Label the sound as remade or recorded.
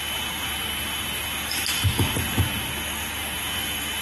recorded